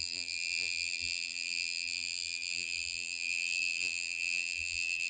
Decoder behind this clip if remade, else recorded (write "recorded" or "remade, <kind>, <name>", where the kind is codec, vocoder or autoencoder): remade, vocoder, BigVGAN v2